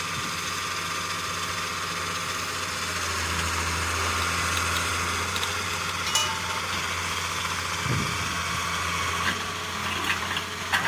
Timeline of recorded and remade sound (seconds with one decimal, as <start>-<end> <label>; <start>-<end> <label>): 0.0-10.9 recorded